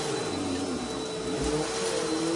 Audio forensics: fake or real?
real